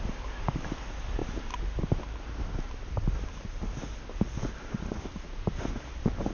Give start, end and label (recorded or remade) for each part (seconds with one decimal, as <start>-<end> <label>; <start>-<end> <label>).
0.0-6.3 recorded